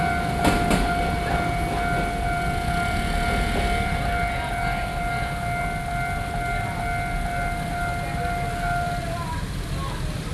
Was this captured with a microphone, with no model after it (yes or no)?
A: yes